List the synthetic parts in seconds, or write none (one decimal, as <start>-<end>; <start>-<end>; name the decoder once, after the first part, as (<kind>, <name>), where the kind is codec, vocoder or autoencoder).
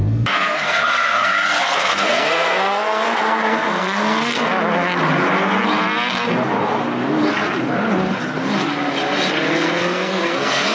0.0-4.5 (codec, SNAC); 9.5-10.7